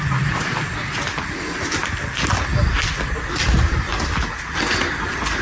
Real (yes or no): yes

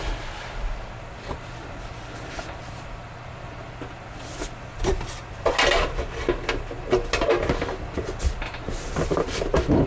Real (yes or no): yes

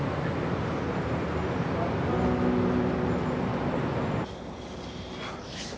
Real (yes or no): yes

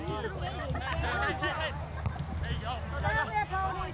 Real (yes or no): yes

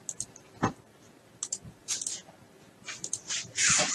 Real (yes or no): yes